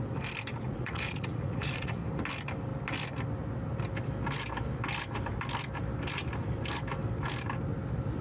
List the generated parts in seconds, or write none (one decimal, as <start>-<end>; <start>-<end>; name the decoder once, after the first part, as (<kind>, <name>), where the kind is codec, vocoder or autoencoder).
0.5-2.0 (vocoder, Vocos)